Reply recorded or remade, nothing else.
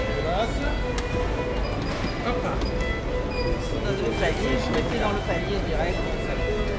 recorded